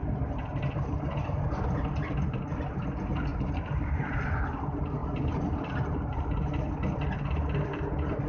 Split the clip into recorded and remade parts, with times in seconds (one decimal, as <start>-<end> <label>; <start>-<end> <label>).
0.0-3.3 recorded; 3.3-4.6 remade; 4.6-5.0 recorded; 5.0-6.5 remade; 6.5-8.3 recorded